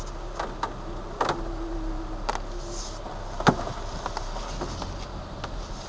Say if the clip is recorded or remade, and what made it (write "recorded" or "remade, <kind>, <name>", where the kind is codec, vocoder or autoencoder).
recorded